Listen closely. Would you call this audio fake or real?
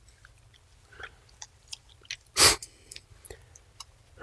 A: real